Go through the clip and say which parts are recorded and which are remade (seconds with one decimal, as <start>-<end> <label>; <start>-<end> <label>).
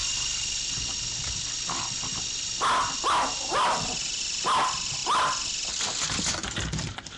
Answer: 0.0-7.2 recorded